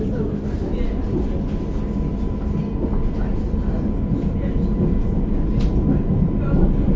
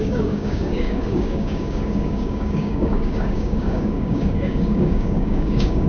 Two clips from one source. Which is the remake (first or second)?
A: second